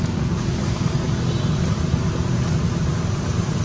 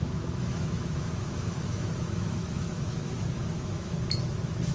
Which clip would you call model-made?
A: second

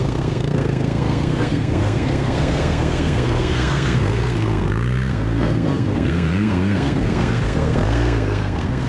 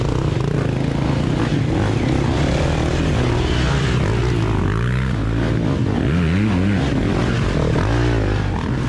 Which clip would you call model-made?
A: first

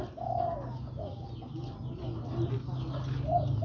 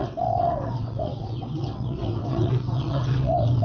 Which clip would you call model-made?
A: second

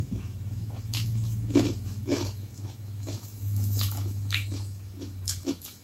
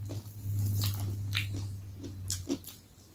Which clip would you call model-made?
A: first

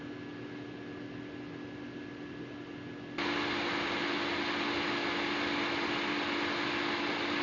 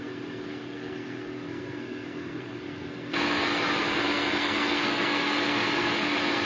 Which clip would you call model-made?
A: second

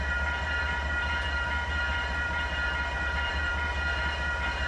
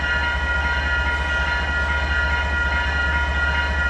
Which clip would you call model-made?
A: first